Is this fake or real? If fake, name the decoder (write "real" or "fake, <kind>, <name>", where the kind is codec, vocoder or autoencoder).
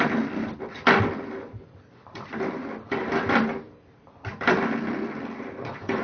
fake, vocoder, BigVGAN v2